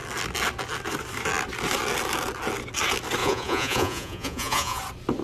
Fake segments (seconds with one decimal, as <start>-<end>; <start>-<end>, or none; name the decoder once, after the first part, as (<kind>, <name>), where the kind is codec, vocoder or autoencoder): 3.2-4.8 (vocoder, Vocos)